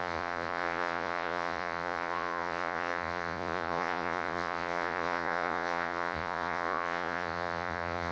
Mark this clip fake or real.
fake